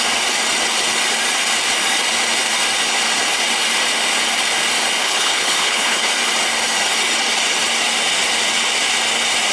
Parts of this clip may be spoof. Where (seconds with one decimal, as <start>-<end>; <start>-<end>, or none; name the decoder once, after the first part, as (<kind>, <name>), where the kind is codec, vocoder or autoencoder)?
5.0-6.1 (codec, HILCodec)